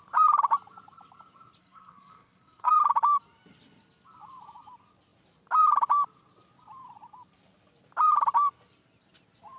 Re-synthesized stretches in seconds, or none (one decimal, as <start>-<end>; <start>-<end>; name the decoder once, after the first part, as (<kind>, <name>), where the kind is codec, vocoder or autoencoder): 1.6-2.7 (codec, SNAC)